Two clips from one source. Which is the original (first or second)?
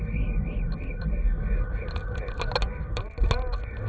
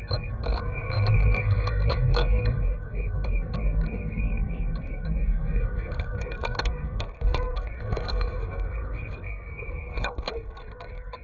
first